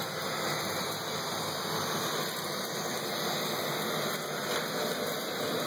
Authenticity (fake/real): real